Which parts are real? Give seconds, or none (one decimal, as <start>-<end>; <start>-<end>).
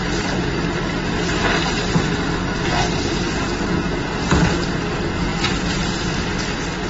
3.6-5.3; 6.1-6.9